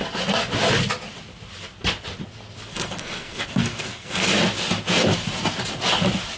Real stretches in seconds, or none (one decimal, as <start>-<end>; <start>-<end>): 0.0-2.7; 4.3-6.4

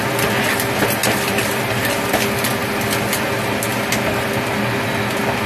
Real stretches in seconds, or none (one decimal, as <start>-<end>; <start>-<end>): 0.0-5.5

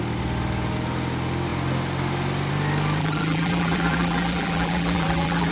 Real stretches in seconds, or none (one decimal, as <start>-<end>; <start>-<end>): 0.0-3.0

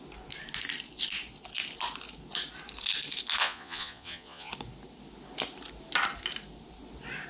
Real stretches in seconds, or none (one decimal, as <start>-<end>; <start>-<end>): 0.0-3.4; 4.5-7.3

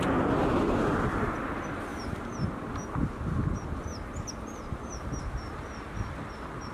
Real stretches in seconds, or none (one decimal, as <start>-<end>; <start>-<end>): 0.0-1.9; 5.9-6.7

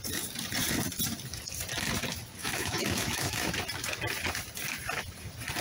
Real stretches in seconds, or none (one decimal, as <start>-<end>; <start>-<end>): 0.0-2.4; 3.5-5.6

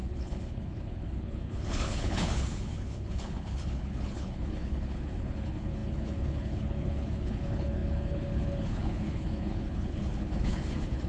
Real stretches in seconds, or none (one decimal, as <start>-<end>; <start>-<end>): none